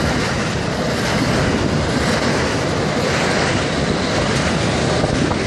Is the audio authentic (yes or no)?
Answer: yes